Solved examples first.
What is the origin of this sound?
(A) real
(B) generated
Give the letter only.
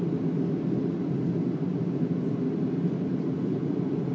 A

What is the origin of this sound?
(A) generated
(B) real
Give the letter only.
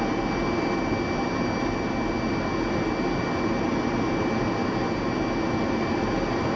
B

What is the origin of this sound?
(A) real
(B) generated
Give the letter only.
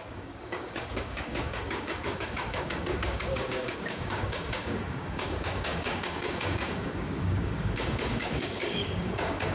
B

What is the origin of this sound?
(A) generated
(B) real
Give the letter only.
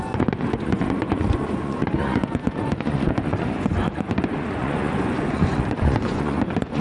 A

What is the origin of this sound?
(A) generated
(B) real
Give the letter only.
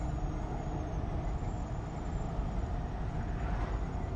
B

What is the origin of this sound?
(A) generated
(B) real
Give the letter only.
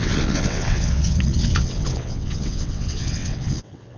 A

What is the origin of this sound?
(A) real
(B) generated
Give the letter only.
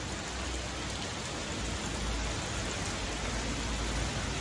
A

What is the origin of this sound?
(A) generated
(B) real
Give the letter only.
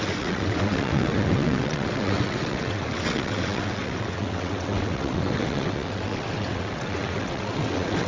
A